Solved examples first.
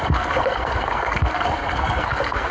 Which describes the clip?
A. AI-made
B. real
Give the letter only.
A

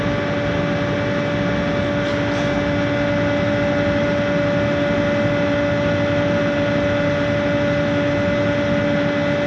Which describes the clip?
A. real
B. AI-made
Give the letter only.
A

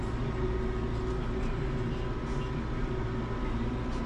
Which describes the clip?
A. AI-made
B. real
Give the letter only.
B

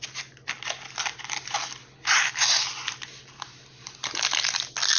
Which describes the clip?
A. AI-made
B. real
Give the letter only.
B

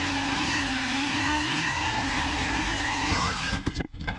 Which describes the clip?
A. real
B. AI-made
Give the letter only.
B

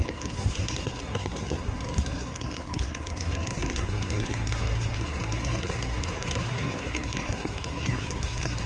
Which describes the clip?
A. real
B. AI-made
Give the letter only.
B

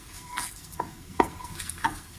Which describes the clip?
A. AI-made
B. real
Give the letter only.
A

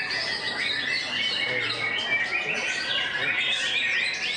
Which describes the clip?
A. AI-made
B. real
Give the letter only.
B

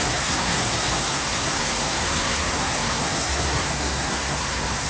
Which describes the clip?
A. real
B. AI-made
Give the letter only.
B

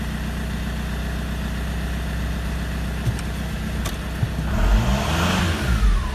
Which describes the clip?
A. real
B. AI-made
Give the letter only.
A